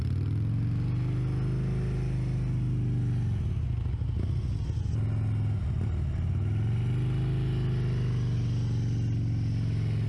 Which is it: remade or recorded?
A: recorded